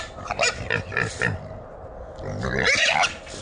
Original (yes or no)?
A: yes